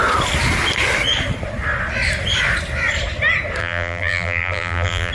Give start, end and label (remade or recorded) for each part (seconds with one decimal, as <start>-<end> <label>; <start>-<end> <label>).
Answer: 0.0-3.6 recorded; 3.6-5.1 remade